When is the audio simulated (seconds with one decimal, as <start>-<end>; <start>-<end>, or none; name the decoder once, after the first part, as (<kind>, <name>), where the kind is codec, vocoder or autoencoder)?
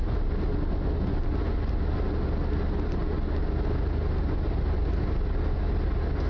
none